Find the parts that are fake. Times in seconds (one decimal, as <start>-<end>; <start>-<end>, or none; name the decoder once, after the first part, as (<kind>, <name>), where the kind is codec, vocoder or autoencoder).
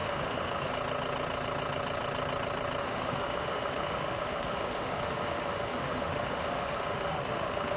0.0-0.7 (autoencoder, DAC-VAE); 2.8-7.8